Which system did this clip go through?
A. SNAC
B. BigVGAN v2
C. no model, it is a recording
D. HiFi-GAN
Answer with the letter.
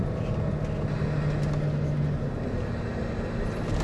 C